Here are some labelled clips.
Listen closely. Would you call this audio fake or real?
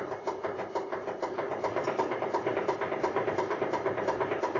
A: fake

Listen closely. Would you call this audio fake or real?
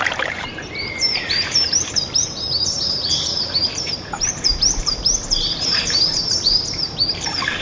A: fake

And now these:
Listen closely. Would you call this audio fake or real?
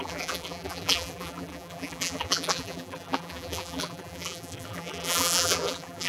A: fake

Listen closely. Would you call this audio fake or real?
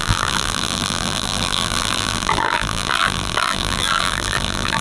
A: fake